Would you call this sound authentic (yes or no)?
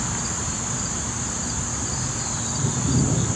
yes